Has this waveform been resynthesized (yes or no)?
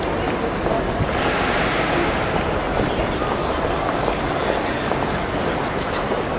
no